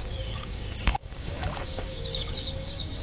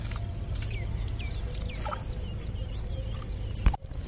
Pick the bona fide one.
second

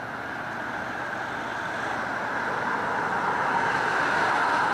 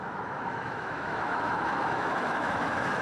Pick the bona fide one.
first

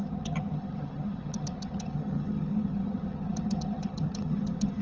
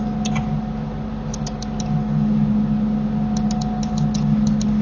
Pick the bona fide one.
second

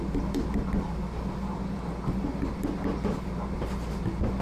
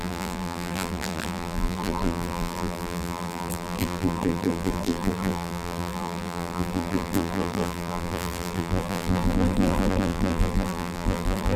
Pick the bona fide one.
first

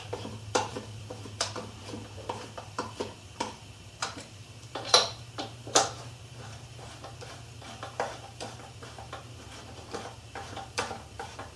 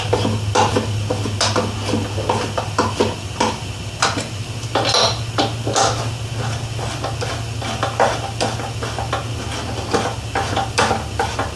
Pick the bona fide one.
second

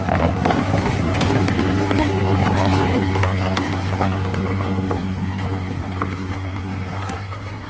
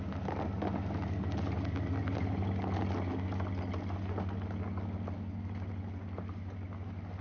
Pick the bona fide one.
second